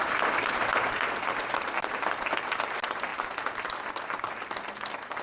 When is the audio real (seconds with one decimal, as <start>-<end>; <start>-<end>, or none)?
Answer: 0.0-5.2